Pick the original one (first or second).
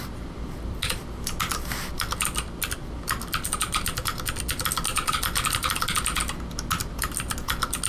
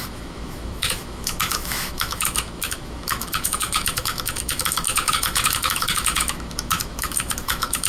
first